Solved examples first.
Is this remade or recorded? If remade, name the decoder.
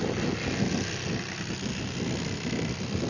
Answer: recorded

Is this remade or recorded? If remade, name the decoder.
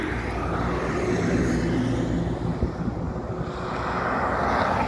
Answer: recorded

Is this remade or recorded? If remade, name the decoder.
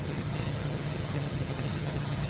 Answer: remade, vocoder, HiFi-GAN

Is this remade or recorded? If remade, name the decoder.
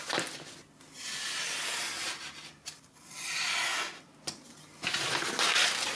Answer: recorded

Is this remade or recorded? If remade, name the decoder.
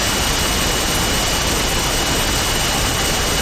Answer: recorded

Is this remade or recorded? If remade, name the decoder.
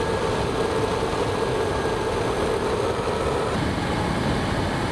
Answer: recorded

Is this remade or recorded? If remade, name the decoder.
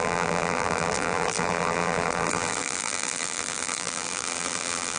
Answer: remade, vocoder, BigVGAN v2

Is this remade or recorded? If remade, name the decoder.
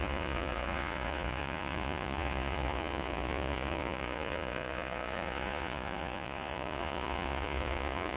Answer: remade, vocoder, Vocos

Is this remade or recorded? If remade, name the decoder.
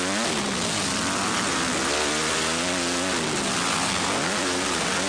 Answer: recorded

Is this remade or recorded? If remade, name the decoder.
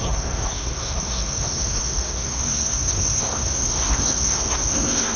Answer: remade, codec, SNAC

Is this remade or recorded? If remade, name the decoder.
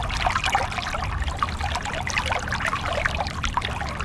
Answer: remade, vocoder, BigVGAN v2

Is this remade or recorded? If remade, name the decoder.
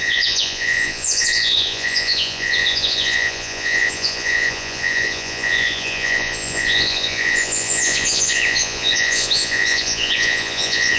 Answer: remade, vocoder, Vocos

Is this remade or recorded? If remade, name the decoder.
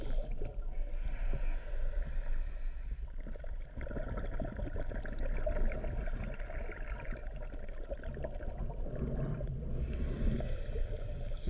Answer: recorded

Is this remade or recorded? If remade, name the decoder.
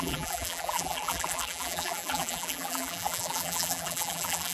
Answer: remade, vocoder, BigVGAN v2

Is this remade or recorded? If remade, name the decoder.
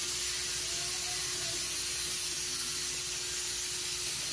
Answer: recorded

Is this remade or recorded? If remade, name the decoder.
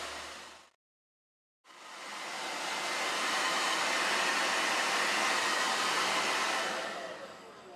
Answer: recorded